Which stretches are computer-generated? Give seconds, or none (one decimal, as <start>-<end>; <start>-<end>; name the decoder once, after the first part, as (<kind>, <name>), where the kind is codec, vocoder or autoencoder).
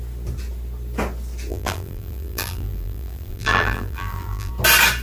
1.5-4.5 (vocoder, BigVGAN v2)